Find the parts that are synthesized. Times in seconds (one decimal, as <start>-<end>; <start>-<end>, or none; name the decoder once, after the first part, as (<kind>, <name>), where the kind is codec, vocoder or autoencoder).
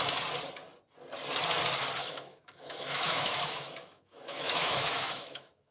2.0-5.7 (autoencoder, DAC-VAE)